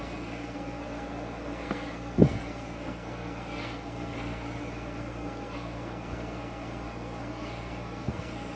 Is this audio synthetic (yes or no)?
yes